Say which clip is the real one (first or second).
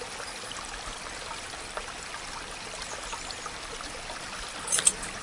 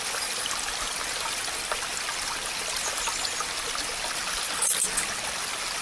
second